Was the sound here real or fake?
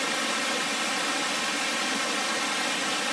real